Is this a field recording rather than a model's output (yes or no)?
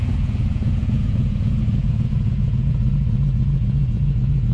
no